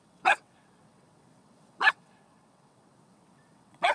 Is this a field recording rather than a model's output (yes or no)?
no